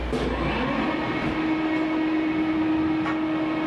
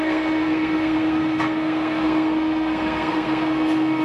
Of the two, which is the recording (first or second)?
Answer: first